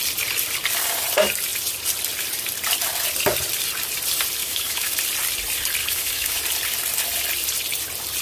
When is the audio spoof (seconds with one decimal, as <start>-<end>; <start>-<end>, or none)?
4.4-5.0; 5.8-6.4